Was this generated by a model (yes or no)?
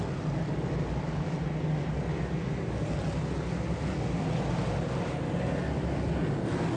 no